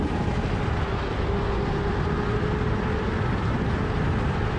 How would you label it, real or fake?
real